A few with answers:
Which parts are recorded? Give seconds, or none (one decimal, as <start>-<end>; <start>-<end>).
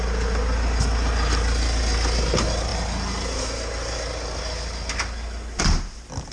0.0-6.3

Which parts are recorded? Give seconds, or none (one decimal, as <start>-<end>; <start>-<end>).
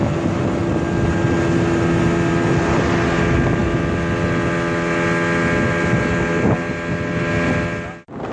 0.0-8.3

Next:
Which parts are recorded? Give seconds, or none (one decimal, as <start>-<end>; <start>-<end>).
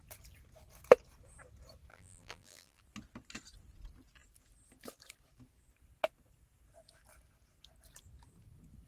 0.0-1.9; 2.8-8.9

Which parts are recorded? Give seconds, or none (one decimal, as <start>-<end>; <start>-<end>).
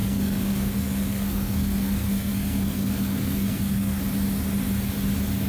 4.0-5.5